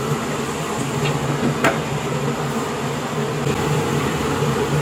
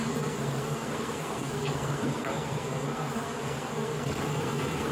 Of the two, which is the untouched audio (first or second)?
first